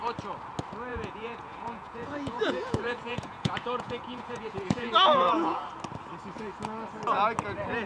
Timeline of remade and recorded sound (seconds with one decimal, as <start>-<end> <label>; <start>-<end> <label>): 0.0-0.9 recorded; 0.9-5.6 remade; 5.6-7.9 recorded